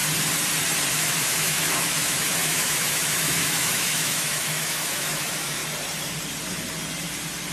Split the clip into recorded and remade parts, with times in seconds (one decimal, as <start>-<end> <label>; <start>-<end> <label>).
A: 0.0-0.9 recorded; 0.9-5.6 remade; 5.6-7.5 recorded